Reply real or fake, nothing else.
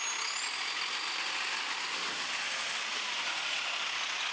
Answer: real